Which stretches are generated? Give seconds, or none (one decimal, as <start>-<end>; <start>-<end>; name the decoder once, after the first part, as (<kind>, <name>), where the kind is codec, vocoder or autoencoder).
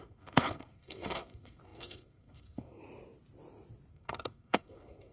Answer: 0.0-2.8 (codec, SNAC); 3.9-5.1